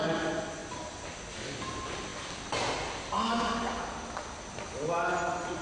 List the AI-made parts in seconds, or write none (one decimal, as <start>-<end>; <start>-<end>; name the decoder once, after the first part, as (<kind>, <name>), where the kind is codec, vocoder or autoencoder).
none